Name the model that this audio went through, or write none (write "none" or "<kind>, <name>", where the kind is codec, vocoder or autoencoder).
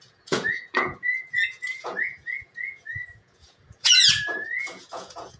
vocoder, Vocos